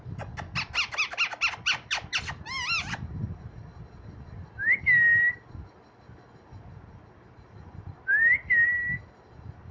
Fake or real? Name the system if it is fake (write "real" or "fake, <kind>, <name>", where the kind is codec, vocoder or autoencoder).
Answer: real